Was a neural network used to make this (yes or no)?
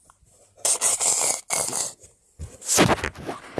no